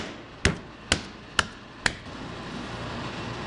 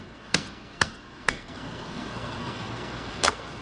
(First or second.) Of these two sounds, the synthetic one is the second